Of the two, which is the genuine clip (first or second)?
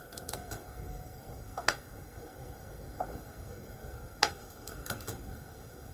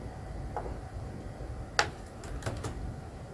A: second